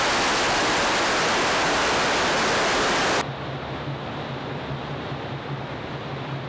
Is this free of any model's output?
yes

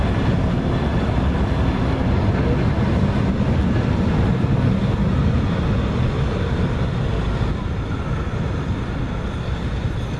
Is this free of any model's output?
yes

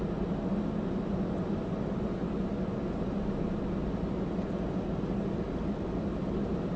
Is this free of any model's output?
yes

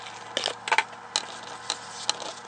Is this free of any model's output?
yes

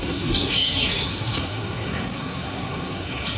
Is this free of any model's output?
no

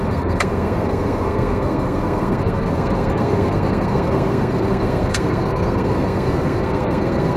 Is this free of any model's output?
no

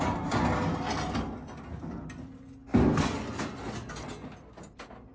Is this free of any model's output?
yes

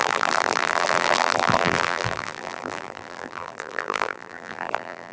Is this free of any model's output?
no